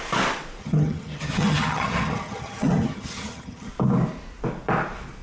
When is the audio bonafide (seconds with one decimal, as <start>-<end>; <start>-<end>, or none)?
0.0-0.6; 3.7-5.2